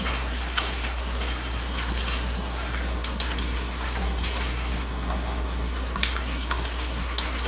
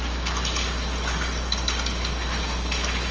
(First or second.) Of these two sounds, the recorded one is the second